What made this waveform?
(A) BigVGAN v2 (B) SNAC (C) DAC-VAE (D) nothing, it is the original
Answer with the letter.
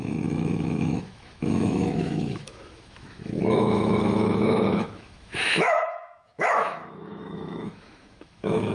C